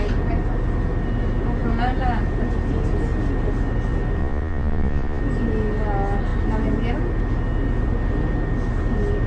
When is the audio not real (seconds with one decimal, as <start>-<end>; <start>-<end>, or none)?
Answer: 4.2-5.2

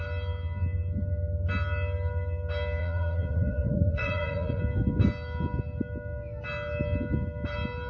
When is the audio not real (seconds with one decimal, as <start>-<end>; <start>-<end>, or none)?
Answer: 2.8-4.6

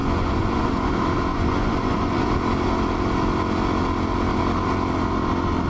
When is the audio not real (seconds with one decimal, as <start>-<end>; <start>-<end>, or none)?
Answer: 0.0-0.9; 1.3-2.3

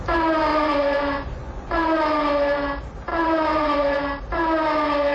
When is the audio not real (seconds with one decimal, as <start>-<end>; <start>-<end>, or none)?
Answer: 0.5-2.0; 3.1-4.0

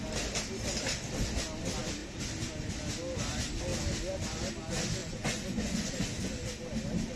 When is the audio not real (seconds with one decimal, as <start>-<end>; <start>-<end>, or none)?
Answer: 5.0-5.9